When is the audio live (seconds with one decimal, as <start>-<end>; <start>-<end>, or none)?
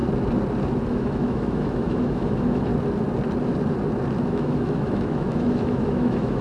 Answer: 0.0-0.9; 2.7-4.3